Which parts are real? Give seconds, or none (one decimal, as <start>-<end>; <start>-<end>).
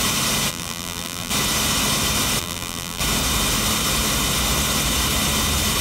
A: 0.0-0.5; 1.3-2.4; 3.0-5.8